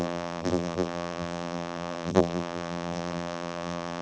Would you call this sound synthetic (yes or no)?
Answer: yes